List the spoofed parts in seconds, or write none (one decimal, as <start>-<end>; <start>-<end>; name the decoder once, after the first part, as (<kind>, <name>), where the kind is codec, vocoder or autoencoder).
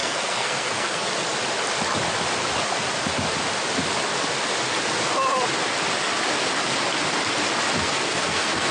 0.0-1.1 (codec, SNAC); 7.8-8.7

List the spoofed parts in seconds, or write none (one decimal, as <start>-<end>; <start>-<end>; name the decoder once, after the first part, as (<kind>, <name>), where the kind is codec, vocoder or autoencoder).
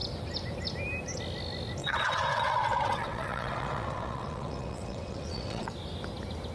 1.8-5.7 (vocoder, WaveNeXt)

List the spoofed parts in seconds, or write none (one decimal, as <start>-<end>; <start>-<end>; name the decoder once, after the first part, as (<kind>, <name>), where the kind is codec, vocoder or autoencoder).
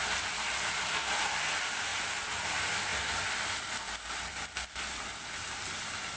none